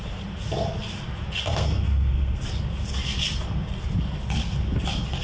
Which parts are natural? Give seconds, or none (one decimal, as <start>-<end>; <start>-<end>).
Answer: 0.0-1.5; 2.4-5.2